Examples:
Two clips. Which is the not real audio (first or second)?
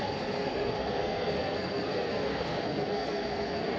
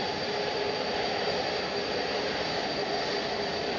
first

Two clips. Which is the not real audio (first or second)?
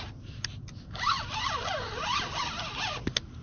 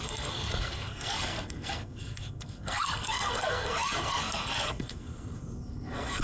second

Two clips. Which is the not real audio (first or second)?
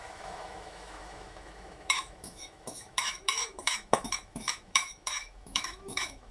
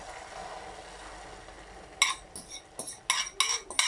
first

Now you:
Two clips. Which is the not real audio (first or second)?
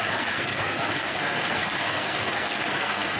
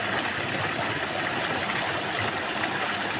first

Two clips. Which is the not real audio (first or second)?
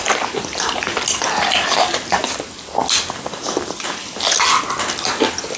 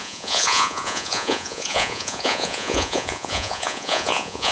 second